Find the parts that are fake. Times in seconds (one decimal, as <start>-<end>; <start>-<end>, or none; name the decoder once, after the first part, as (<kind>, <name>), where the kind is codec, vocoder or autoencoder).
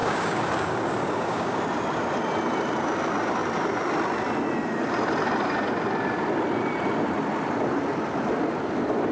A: 0.0-1.6 (codec, DAC)